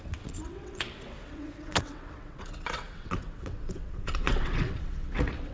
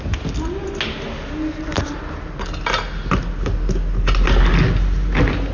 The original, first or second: second